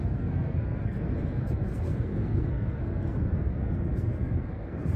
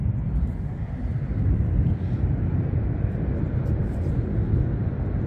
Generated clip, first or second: first